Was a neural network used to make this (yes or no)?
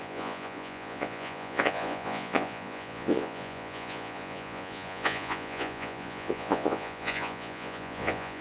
yes